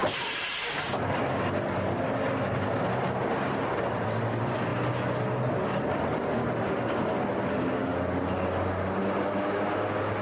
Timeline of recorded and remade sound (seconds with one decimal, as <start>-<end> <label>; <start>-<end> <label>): 0.0-10.2 recorded